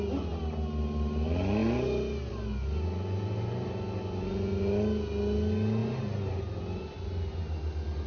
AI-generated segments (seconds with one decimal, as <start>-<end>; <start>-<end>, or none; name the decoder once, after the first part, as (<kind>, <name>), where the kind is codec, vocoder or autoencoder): none

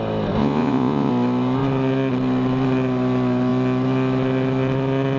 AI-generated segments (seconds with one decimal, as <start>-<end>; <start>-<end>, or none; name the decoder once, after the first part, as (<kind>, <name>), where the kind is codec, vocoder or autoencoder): 0.4-1.1 (vocoder, Vocos)